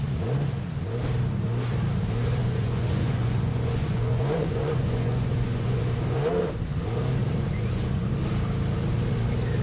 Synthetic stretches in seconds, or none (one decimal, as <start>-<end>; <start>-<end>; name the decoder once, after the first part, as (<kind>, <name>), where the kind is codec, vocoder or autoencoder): 2.4-5.8 (vocoder, Vocos); 7.2-8.1